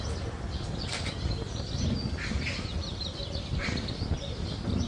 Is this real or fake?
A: real